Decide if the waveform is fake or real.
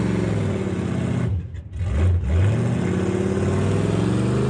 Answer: real